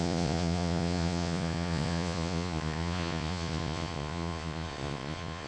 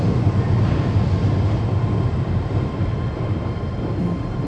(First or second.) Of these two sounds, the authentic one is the second